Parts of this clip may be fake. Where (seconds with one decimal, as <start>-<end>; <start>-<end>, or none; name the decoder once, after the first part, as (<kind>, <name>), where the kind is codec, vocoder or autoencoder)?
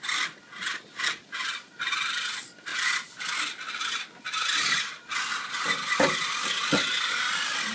0.0-7.7 (vocoder, BigVGAN v2)